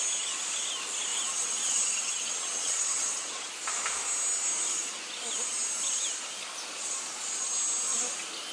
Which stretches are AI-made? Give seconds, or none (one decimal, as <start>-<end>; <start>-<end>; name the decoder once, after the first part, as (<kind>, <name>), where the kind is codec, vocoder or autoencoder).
1.1-3.5 (vocoder, WaveNeXt)

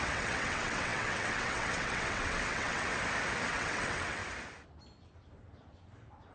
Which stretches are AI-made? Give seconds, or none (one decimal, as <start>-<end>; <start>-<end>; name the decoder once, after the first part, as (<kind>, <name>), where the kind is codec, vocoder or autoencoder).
0.0-2.9 (vocoder, WaveNeXt); 3.5-4.2